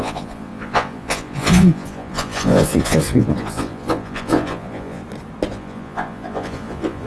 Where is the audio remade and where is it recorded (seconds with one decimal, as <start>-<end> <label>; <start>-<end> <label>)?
0.0-5.0 remade; 5.0-5.5 recorded; 5.5-7.1 remade